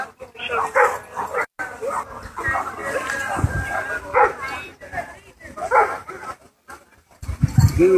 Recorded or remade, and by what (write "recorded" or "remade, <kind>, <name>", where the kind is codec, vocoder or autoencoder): recorded